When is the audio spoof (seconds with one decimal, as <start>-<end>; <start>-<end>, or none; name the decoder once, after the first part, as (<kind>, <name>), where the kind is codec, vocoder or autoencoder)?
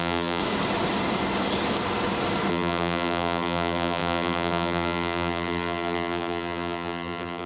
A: 0.0-0.4 (vocoder, BigVGAN v2); 2.5-7.5